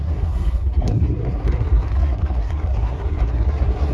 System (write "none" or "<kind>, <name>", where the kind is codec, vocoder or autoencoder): codec, SNAC